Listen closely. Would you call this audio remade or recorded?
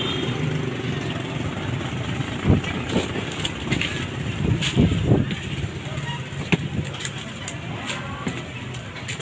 recorded